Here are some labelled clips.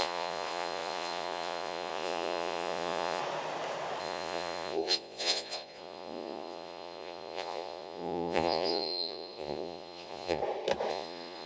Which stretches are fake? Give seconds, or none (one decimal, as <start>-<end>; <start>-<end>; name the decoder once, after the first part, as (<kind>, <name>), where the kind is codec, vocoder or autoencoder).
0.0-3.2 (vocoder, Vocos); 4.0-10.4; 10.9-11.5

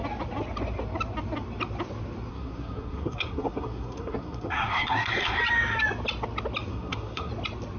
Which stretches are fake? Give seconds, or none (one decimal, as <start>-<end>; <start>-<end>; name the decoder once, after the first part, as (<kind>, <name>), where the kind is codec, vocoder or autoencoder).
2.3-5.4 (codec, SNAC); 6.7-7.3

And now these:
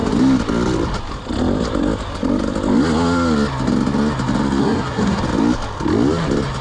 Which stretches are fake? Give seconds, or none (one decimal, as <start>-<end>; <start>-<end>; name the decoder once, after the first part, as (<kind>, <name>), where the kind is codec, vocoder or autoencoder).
4.6-5.2 (codec, SNAC)

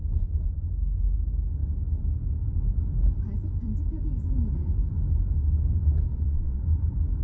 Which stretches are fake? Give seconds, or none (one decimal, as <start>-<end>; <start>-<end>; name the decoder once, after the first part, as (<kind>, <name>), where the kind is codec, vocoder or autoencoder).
6.1-6.6 (vocoder, Vocos)

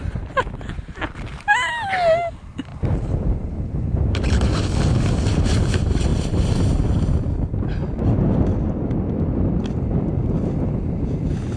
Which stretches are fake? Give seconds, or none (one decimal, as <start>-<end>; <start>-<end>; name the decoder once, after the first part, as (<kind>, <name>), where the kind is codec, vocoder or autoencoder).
2.7-4.4 (vocoder, BigVGAN v2); 6.1-6.7